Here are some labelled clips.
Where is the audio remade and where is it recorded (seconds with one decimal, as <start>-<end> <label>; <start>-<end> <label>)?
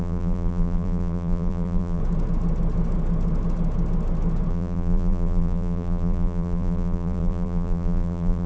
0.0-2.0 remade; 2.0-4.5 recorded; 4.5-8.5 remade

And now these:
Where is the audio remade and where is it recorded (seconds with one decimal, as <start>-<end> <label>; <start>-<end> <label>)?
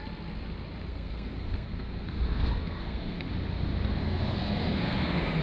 0.0-0.9 recorded; 0.9-3.3 remade; 3.3-4.0 recorded; 4.0-5.4 remade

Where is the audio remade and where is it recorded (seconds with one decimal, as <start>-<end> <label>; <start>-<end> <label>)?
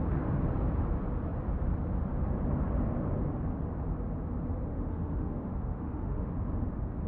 0.0-4.7 recorded; 4.7-6.3 remade; 6.3-7.1 recorded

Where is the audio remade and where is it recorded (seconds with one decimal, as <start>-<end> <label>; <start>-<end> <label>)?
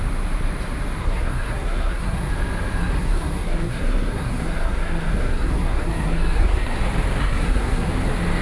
0.0-1.0 recorded; 1.0-2.3 remade; 2.3-2.8 recorded; 2.8-6.8 remade; 6.8-7.2 recorded; 7.2-7.9 remade; 7.9-8.4 recorded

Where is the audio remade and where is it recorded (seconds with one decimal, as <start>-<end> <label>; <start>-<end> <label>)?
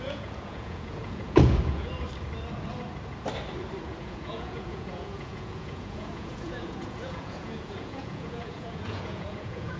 0.0-1.9 remade; 1.9-3.8 recorded; 3.8-9.8 remade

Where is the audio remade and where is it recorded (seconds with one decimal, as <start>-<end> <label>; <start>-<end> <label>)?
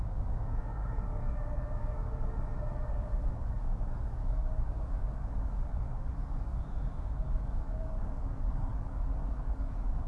0.0-10.1 remade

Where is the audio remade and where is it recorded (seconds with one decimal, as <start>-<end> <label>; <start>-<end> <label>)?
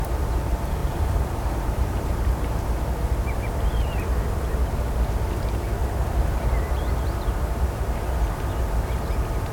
0.0-0.8 recorded; 0.8-2.2 remade; 2.2-5.8 recorded; 5.8-7.7 remade; 7.7-9.5 recorded